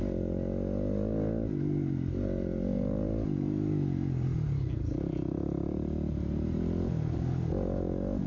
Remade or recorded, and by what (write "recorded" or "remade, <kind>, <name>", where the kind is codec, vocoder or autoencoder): recorded